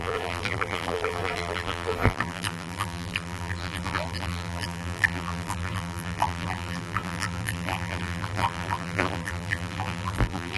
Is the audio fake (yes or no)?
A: yes